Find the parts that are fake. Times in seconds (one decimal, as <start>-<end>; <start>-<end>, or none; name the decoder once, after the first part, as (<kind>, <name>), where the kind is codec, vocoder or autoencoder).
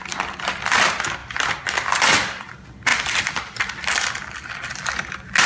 none